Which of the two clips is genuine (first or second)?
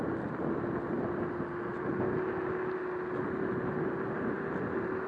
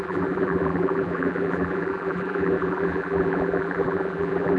first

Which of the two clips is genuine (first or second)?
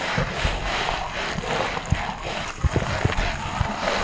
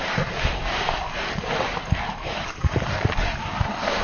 first